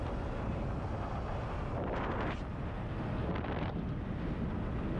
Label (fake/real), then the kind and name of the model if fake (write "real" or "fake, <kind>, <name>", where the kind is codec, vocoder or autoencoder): real